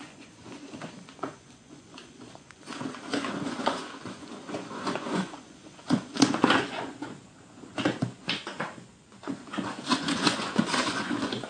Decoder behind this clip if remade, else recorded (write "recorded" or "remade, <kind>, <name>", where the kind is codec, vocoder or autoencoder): remade, vocoder, Vocos